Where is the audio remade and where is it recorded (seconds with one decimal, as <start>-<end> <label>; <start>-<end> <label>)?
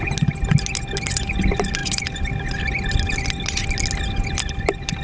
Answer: 0.0-5.0 recorded